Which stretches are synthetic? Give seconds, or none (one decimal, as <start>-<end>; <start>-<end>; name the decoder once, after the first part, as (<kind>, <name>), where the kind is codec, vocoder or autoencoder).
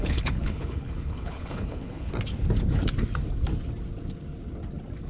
0.0-2.1 (codec, HILCodec)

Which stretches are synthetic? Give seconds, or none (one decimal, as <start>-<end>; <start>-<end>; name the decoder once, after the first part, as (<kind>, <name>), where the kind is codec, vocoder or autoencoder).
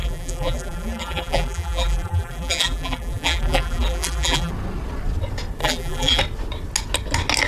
0.0-4.5 (vocoder, BigVGAN v2); 5.6-6.2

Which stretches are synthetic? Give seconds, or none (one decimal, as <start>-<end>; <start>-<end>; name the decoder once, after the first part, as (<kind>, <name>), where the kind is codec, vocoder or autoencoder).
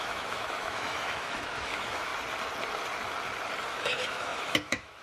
0.0-2.1 (autoencoder, DAC-VAE); 3.7-5.0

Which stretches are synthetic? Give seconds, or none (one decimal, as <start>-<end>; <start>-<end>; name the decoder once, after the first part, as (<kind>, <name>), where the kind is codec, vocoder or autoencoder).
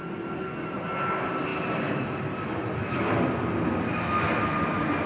none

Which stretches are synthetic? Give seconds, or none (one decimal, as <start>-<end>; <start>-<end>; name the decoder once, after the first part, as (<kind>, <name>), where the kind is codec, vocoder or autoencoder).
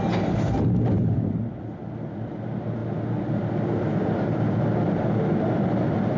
none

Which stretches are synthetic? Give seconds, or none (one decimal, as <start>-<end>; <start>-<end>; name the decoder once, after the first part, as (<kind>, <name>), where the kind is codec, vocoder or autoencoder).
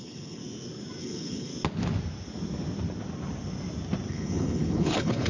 0.0-0.4 (codec, HILCodec); 1.0-1.5; 4.1-5.3